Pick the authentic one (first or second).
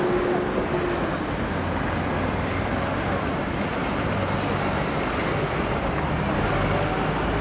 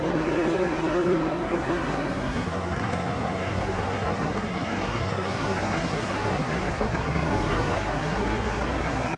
first